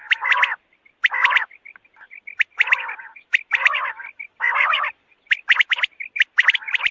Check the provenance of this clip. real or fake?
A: fake